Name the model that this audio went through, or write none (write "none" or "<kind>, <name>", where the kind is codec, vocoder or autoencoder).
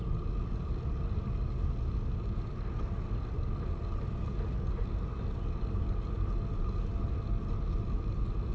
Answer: none